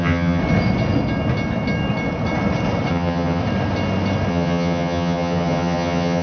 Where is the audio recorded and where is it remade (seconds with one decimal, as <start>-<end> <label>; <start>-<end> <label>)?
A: 0.0-0.4 remade; 0.4-2.9 recorded; 2.9-3.4 remade; 3.4-4.3 recorded; 4.3-6.2 remade